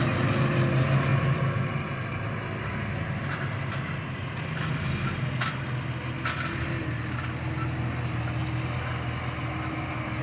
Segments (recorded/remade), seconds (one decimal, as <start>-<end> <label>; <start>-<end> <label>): 0.0-10.2 recorded